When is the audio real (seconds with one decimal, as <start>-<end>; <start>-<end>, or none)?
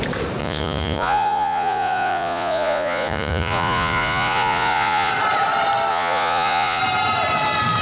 0.0-0.4; 5.1-5.9; 6.8-7.8